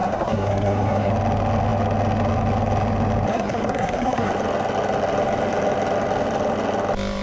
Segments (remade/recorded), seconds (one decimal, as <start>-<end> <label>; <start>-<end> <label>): 0.0-1.1 remade; 1.1-3.3 recorded; 3.3-4.3 remade; 4.3-7.2 recorded